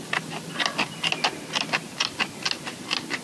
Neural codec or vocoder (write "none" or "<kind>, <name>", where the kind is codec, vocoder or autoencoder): none